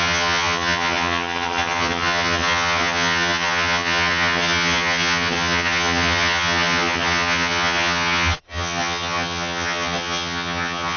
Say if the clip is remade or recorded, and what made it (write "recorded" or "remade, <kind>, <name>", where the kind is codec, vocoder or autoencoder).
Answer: remade, vocoder, HiFi-GAN